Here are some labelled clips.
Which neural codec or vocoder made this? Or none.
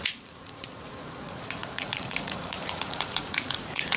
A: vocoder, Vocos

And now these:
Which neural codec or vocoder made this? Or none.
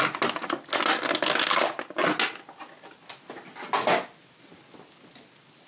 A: none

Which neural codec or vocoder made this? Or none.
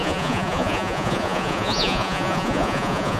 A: vocoder, Vocos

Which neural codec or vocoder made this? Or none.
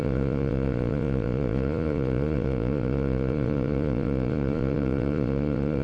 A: vocoder, Vocos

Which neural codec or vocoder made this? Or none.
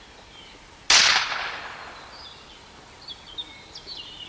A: none